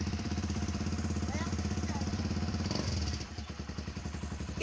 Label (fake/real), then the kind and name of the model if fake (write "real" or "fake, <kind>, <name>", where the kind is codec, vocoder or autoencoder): fake, vocoder, BigVGAN v2